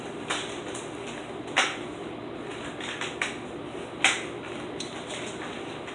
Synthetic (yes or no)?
no